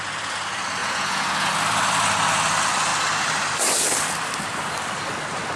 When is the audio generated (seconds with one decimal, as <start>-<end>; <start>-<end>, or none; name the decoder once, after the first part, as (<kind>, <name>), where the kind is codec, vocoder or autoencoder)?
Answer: 0.8-1.5 (vocoder, Vocos)

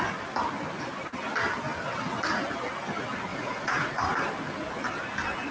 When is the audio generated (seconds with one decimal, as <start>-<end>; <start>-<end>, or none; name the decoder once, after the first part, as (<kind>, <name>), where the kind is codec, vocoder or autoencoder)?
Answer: 3.3-4.1 (vocoder, Vocos)

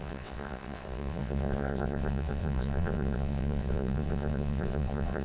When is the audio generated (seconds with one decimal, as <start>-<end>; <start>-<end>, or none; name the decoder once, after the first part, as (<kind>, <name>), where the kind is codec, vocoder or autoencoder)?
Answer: 0.0-5.2 (vocoder, WaveNeXt)

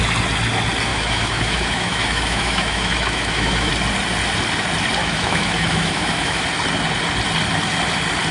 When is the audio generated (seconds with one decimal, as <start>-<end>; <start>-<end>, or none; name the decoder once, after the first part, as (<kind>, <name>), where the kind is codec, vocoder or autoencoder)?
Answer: 0.9-3.7 (autoencoder, DAC-VAE); 5.0-6.4

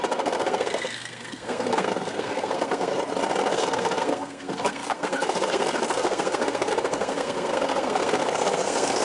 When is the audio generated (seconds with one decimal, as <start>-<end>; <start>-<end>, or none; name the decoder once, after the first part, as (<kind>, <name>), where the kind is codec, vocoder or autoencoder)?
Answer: 0.0-2.9 (codec, SNAC); 3.5-9.0

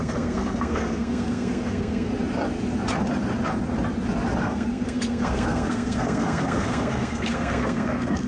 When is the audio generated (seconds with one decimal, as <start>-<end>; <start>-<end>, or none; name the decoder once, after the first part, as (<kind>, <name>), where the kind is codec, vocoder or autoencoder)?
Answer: 0.0-2.1 (codec, SNAC); 4.4-8.3

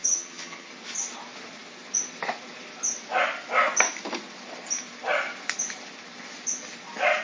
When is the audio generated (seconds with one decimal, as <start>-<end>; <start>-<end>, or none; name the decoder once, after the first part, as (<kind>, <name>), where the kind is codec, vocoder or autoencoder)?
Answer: 0.0-0.7 (vocoder, HiFi-GAN)